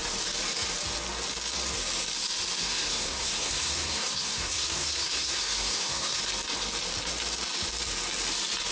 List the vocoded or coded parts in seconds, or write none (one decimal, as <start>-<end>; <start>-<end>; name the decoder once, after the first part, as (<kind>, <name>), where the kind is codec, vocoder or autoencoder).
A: 2.6-6.2 (codec, SNAC)

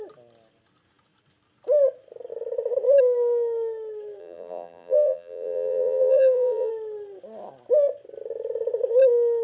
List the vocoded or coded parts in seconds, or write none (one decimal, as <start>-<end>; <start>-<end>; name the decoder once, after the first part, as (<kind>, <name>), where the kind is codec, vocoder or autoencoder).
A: 4.2-6.7 (vocoder, BigVGAN v2)

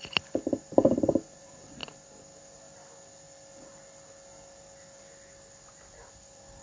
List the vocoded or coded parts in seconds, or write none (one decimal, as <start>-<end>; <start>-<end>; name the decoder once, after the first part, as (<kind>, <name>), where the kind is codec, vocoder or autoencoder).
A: 1.8-2.4 (vocoder, BigVGAN v2)

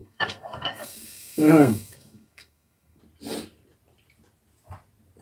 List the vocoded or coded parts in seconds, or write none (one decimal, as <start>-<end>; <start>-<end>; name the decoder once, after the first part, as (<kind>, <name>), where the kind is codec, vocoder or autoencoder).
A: 0.0-3.0 (codec, SNAC)